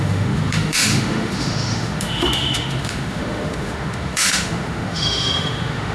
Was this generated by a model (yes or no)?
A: yes